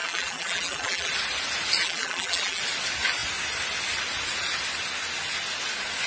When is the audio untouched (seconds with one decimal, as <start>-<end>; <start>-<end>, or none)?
1.1-1.8; 2.6-6.1